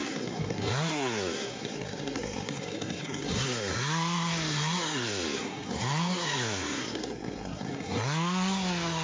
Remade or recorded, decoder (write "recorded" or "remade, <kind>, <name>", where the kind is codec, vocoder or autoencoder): remade, codec, SNAC